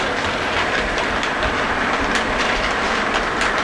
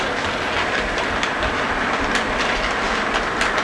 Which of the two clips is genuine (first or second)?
second